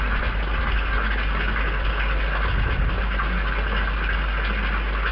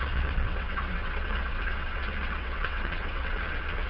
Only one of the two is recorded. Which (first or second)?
first